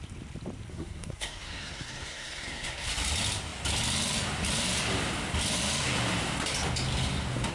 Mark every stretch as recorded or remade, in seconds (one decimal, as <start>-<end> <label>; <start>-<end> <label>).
0.0-0.7 recorded; 0.7-2.9 remade; 2.9-7.5 recorded